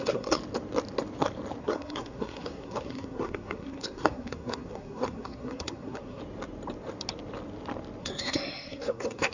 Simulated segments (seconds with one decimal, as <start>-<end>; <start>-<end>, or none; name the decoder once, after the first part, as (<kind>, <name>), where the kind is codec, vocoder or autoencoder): 0.0-0.4 (codec, SNAC); 1.6-6.2; 8.0-9.3